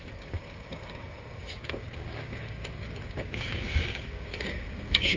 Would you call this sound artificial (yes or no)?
yes